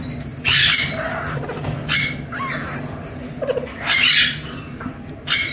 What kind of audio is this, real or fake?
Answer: real